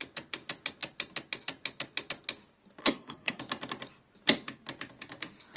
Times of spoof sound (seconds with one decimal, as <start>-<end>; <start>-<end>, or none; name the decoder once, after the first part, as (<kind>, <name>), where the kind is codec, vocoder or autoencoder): 2.8-3.4 (codec, SNAC)